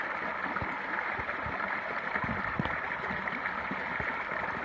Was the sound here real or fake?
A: real